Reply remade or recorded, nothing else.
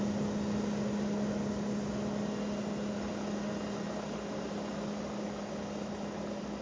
recorded